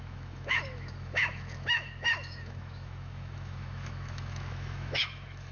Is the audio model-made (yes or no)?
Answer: yes